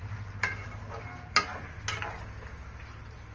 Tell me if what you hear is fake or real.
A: real